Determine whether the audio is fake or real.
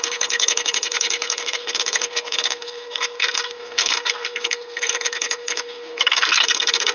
fake